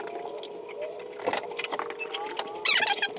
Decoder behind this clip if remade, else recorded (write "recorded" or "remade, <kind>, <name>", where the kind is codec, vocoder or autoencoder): recorded